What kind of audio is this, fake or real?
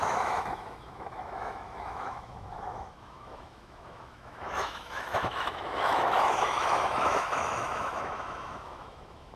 fake